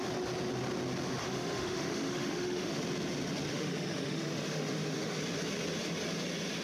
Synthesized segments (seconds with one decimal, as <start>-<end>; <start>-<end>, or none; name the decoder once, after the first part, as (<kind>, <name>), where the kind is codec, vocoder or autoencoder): 1.2-2.8 (autoencoder, DAC-VAE); 3.5-5.2